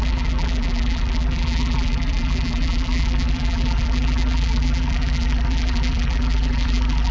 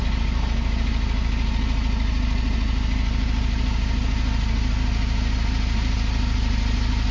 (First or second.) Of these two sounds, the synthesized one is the first